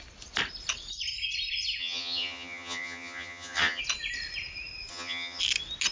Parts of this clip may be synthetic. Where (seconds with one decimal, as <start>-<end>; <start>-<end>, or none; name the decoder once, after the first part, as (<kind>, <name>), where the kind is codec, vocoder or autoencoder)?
1.8-3.8 (vocoder, HiFi-GAN); 4.9-5.4